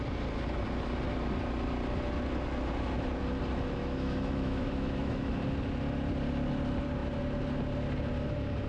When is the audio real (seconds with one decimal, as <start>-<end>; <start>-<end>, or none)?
0.0-3.8; 5.3-8.7